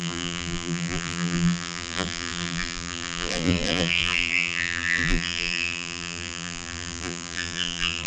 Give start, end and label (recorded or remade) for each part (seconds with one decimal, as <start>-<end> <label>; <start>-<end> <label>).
0.0-8.1 remade